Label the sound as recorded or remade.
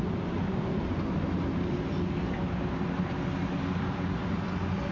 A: recorded